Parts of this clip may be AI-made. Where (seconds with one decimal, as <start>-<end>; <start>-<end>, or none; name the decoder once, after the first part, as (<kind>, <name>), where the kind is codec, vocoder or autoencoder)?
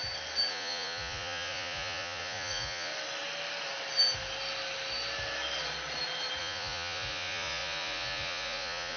0.5-2.9 (vocoder, Vocos); 6.4-9.0